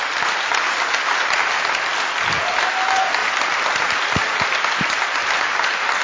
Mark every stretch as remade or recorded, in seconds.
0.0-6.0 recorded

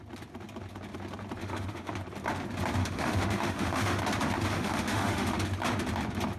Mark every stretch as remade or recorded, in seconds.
0.0-1.4 recorded; 1.4-1.9 remade; 1.9-2.8 recorded; 2.8-4.0 remade; 4.0-4.5 recorded; 4.5-5.4 remade; 5.4-6.4 recorded

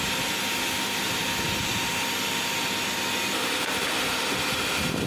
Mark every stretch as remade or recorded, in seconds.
0.0-5.1 recorded

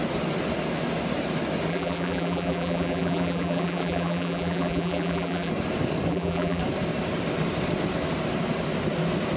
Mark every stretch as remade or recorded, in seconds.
0.0-1.7 recorded; 1.7-5.5 remade; 5.5-6.1 recorded; 6.1-6.6 remade; 6.6-9.4 recorded